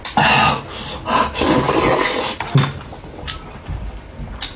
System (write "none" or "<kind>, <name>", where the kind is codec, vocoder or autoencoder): none